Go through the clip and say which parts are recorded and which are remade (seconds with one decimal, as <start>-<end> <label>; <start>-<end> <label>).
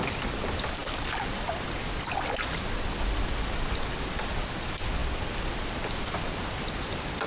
0.0-7.3 recorded